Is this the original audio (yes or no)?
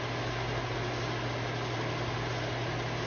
yes